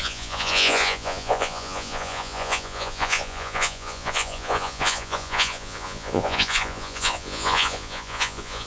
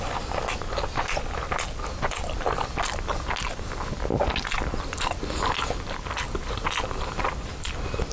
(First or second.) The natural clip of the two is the second